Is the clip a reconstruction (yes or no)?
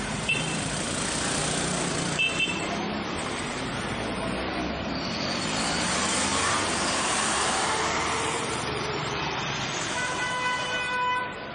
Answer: yes